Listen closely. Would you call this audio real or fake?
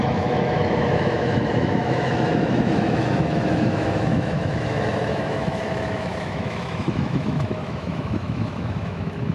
fake